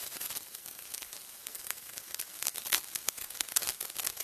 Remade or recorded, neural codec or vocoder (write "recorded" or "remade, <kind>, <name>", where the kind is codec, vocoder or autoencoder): remade, codec, SNAC